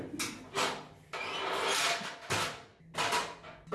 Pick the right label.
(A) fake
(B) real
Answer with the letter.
B